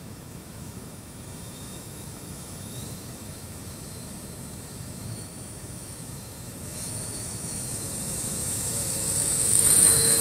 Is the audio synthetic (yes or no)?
yes